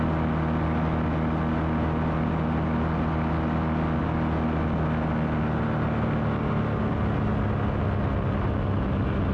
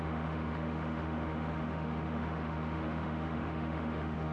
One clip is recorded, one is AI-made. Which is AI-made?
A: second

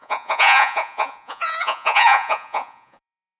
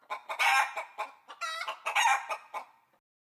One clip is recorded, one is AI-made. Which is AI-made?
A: first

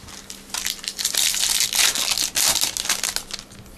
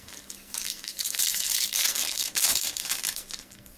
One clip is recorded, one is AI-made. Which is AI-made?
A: second